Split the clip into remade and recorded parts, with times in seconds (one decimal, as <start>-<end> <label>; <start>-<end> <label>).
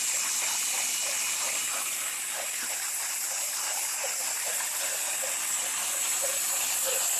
0.0-7.2 recorded